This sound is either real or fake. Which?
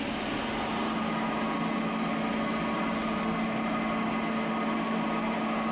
real